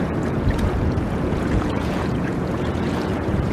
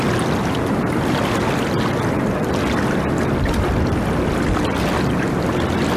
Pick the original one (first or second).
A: second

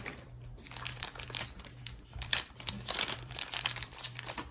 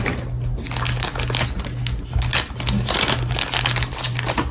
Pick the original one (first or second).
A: second